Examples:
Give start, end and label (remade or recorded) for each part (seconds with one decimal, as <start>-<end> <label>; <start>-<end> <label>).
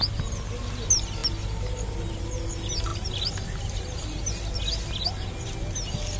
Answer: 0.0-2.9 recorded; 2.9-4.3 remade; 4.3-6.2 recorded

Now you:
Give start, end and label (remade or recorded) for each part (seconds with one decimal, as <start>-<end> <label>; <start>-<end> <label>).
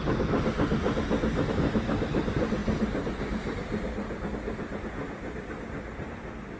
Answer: 0.0-6.6 recorded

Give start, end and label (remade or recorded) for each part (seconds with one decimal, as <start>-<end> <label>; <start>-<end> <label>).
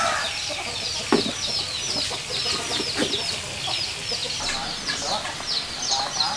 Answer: 0.0-4.2 recorded; 4.2-5.8 remade; 5.8-6.4 recorded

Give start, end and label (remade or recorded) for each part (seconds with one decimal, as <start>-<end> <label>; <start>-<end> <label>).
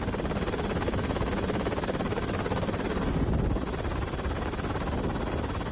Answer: 0.0-5.7 recorded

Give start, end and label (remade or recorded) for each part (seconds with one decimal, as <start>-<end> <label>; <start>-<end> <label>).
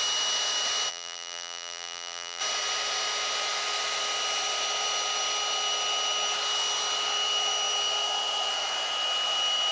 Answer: 0.0-0.9 recorded; 0.9-2.4 remade; 2.4-9.7 recorded